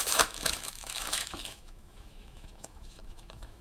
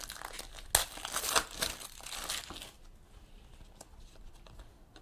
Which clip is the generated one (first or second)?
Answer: first